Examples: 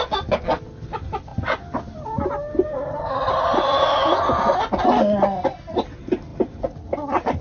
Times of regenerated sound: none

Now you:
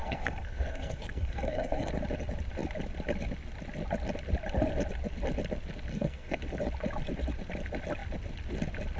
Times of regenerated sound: 0.0-1.9 (codec, SNAC); 5.9-6.4

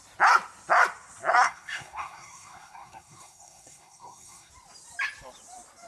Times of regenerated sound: 1.3-4.5 (codec, SNAC)

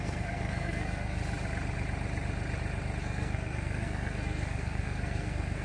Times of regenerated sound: 0.0-1.2 (codec, SNAC); 3.0-5.6

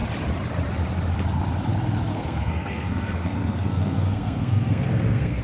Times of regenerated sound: 2.1-5.4 (codec, SNAC)

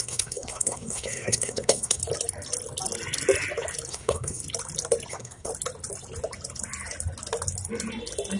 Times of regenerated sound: 0.0-2.0 (codec, SNAC); 3.9-4.4; 5.1-5.5

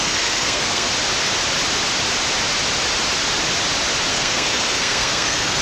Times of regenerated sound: 0.0-0.9 (codec, SNAC); 4.1-5.6